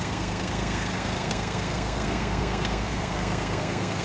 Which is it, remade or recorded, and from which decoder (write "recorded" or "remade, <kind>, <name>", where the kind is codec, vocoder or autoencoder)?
remade, codec, SNAC